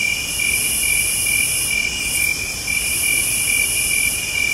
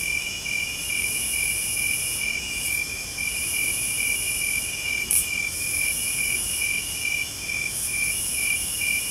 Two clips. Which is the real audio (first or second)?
first